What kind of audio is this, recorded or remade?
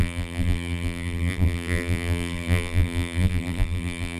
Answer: remade